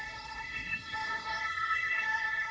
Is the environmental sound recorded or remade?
remade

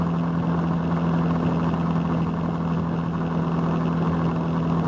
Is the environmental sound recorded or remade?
recorded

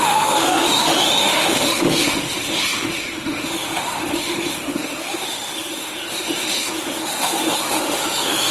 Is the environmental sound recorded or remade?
remade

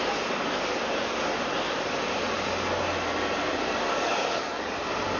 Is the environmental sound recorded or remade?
recorded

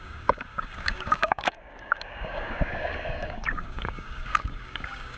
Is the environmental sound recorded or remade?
remade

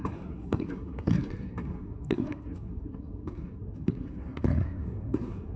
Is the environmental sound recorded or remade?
remade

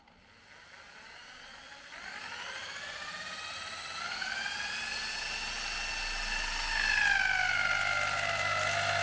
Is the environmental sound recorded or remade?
recorded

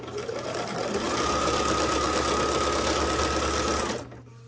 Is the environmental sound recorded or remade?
recorded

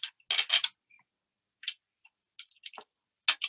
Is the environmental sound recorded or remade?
recorded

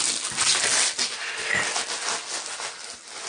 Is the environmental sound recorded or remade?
recorded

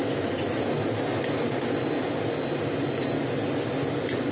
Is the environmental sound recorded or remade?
recorded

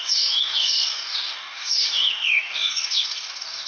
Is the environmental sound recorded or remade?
remade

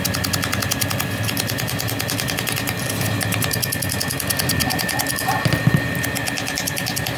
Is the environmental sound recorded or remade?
recorded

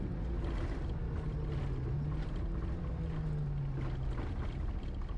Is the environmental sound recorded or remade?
recorded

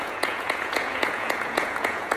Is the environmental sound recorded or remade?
remade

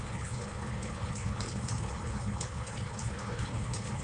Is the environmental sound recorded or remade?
remade